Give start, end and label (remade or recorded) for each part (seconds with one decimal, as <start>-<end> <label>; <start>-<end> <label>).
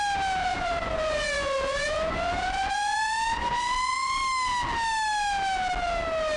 0.0-0.4 recorded; 0.4-4.2 remade; 4.2-6.4 recorded